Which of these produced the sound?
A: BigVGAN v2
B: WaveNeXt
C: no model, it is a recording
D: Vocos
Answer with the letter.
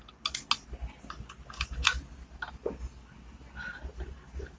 C